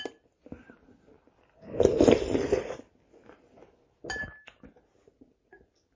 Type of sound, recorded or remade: recorded